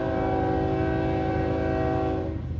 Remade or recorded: recorded